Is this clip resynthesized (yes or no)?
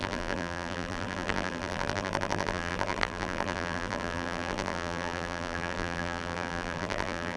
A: yes